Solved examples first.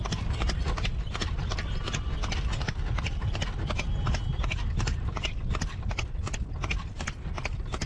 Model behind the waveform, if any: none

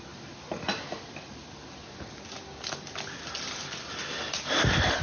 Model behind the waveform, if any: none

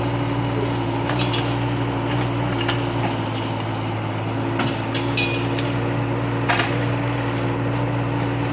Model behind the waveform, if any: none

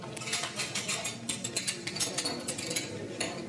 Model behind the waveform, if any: none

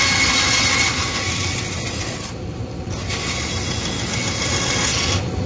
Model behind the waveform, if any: none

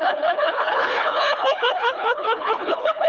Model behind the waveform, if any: codec, HILCodec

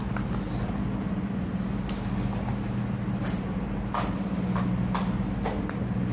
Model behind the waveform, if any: none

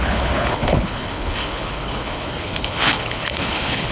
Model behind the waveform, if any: codec, HILCodec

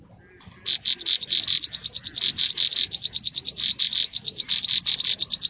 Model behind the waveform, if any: none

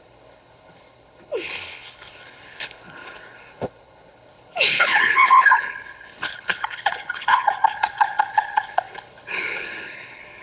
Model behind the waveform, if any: codec, HILCodec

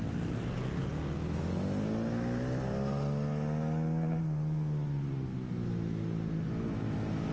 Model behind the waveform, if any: none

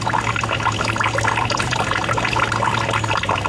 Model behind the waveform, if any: none